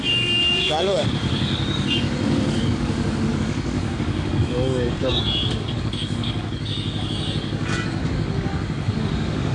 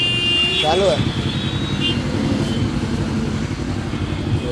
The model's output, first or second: first